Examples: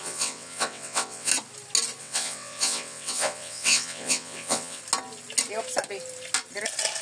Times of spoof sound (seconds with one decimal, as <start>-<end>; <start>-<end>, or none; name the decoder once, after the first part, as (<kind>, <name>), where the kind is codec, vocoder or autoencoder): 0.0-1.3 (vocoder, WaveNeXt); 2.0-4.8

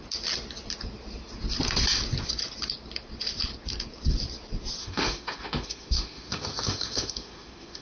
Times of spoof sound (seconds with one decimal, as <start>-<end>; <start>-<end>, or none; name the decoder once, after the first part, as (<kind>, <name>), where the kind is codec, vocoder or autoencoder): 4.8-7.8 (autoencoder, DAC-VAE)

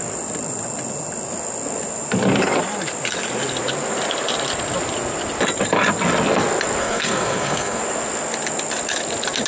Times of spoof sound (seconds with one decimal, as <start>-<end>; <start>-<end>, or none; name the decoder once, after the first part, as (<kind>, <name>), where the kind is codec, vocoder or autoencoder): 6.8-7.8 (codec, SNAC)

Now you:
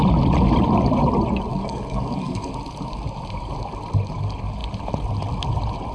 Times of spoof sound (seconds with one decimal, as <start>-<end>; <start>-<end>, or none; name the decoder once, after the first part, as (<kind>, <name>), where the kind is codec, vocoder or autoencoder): 1.5-2.5 (codec, DAC)

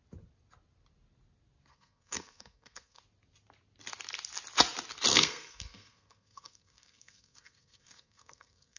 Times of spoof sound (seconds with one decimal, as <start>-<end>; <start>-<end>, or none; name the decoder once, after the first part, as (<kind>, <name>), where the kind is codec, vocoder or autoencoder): 1.7-3.0 (codec, SNAC); 5.1-8.8

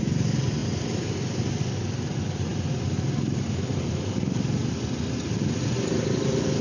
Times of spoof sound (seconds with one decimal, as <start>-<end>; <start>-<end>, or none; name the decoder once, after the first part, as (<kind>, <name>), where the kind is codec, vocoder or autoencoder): 0.6-1.5 (vocoder, BigVGAN v2)